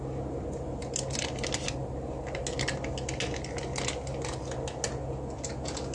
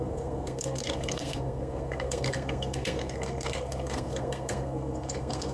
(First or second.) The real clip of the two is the first